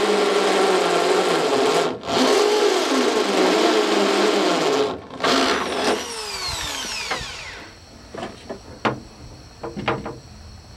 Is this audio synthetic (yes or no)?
no